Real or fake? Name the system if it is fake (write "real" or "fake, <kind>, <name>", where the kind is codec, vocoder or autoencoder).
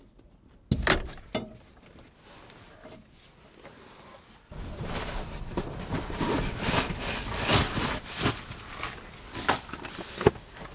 real